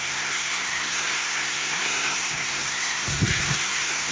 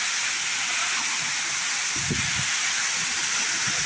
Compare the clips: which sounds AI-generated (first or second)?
first